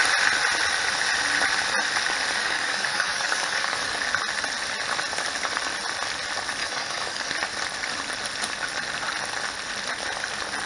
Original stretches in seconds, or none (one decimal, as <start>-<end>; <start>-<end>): 0.0-2.4; 4.0-6.6; 7.3-10.7